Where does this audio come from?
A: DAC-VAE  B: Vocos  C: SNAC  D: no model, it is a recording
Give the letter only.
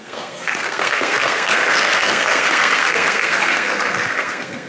C